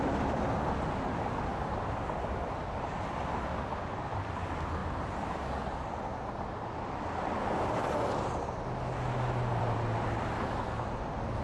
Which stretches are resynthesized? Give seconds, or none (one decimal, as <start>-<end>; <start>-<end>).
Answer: 1.5-4.3; 4.8-5.6; 9.5-10.3